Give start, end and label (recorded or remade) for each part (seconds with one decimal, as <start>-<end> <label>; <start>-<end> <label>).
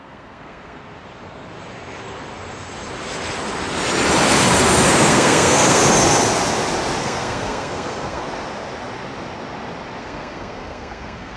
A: 0.0-0.8 remade; 0.8-5.1 recorded; 5.1-5.8 remade; 5.8-7.0 recorded; 7.0-8.2 remade; 8.2-10.0 recorded; 10.0-11.4 remade